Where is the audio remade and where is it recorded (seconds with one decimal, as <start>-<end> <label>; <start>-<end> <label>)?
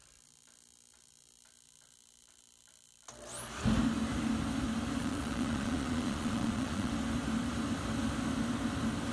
0.0-5.0 recorded; 5.0-6.9 remade; 6.9-9.1 recorded